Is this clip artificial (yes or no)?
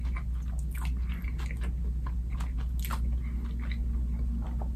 no